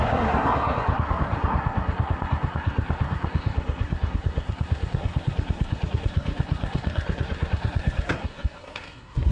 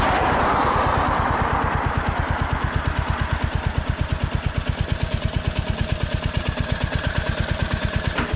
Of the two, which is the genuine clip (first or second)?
second